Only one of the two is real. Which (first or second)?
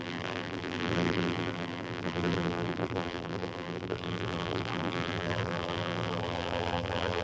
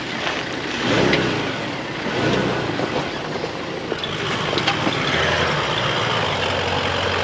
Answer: second